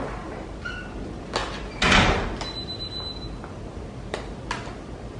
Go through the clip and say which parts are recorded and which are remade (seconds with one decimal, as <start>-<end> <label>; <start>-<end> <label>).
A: 0.0-5.2 recorded